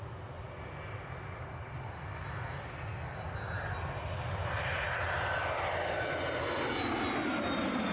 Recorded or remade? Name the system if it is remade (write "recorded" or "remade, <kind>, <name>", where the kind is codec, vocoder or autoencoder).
recorded